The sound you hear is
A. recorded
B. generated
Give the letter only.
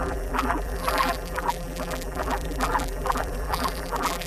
B